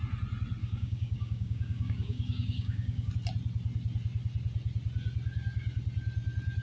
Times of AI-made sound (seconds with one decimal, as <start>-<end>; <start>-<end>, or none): 0.6-3.1